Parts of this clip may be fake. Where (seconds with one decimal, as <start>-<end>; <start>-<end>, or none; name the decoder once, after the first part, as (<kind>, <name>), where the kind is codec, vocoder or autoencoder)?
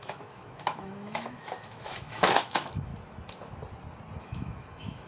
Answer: 0.0-2.9 (autoencoder, DAC-VAE); 4.2-5.1